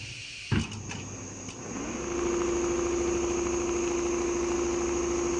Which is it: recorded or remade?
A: recorded